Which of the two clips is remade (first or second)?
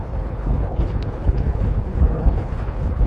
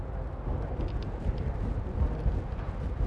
first